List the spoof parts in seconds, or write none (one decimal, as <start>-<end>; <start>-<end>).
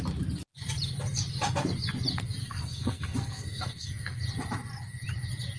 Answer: 2.4-4.2